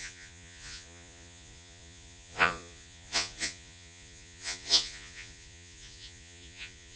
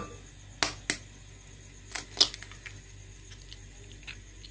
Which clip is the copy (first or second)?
first